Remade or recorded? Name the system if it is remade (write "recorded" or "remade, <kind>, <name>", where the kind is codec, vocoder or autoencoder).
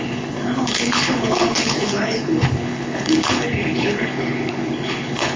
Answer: remade, codec, HILCodec